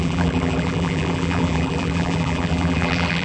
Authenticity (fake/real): fake